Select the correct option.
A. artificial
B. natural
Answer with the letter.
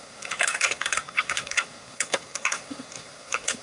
A